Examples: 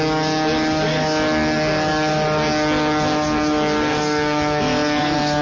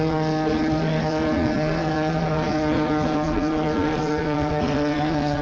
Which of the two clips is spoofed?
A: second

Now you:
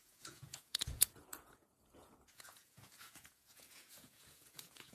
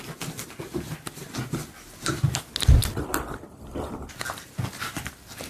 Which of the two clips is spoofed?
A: first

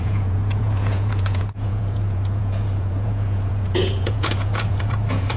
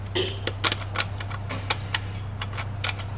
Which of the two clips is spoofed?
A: first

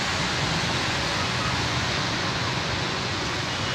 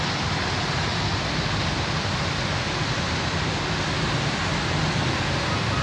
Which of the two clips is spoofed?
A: first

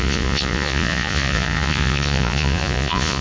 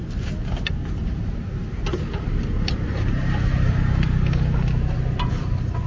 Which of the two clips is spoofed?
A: first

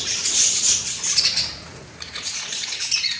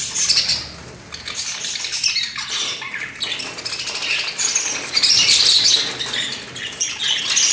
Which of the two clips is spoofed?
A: first